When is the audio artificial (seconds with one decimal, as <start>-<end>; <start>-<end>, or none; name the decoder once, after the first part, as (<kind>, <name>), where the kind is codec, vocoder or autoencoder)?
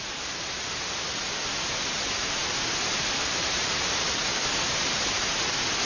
none